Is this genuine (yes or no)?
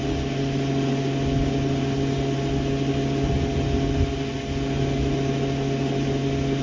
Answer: yes